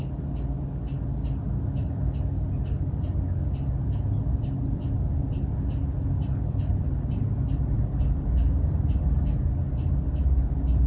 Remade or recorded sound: recorded